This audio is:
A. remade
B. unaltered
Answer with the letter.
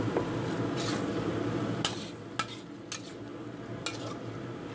B